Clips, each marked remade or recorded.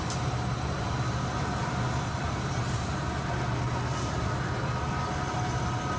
recorded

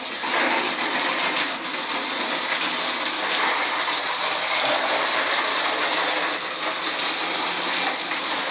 recorded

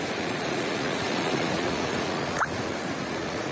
remade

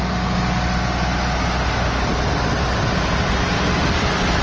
recorded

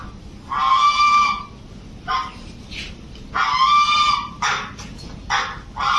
recorded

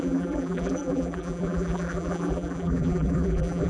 remade